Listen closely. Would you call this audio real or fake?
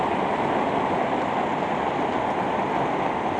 real